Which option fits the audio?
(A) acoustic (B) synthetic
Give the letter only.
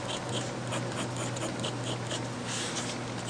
A